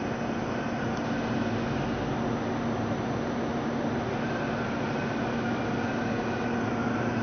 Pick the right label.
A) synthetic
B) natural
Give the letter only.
B